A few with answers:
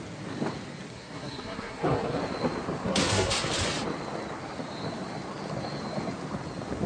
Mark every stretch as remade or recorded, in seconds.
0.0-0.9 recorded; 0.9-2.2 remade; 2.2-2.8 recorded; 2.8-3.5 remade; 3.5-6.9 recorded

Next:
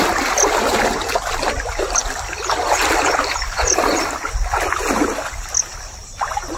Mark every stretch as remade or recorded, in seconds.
0.0-6.6 recorded

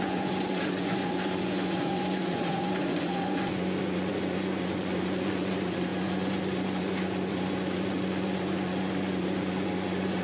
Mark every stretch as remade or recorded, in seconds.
0.0-10.2 remade